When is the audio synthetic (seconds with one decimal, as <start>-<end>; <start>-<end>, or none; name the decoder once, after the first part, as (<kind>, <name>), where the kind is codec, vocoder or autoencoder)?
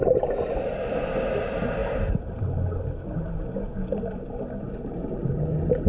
none